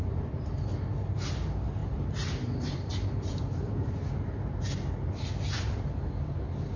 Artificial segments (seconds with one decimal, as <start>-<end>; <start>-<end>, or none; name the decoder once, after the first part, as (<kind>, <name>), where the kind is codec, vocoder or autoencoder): 0.0-4.0 (vocoder, BigVGAN v2)